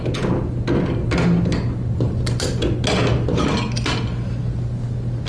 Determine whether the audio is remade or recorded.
recorded